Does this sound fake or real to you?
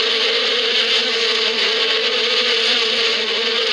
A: real